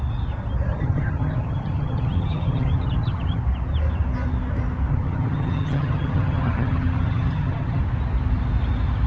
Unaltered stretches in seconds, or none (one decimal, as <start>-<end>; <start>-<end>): 0.0-0.7; 3.4-4.9; 7.8-9.1